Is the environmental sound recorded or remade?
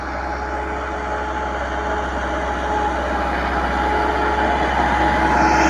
recorded